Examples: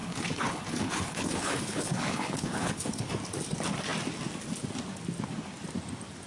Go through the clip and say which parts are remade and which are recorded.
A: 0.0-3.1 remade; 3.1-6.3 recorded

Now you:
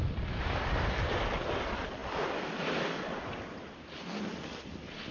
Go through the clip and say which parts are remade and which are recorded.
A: 0.0-5.1 recorded

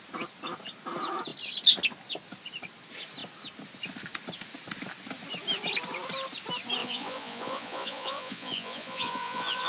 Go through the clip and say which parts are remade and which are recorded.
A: 0.0-6.8 recorded; 6.8-9.7 remade

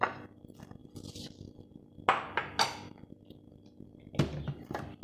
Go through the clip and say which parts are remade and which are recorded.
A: 0.0-5.0 recorded

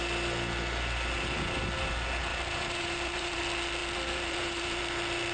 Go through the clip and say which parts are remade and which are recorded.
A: 0.0-2.3 recorded; 2.3-3.4 remade; 3.4-3.8 recorded; 3.8-4.8 remade; 4.8-5.3 recorded

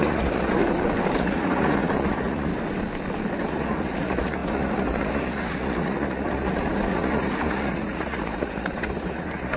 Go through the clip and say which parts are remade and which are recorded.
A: 0.0-0.6 remade; 0.6-1.2 recorded; 1.2-2.5 remade; 2.5-3.5 recorded; 3.5-9.6 remade